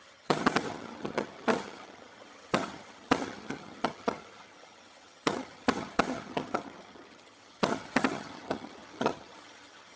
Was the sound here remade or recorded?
remade